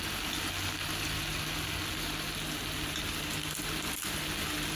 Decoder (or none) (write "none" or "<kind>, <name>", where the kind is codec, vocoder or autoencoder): none